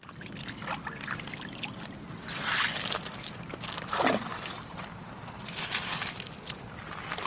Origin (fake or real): real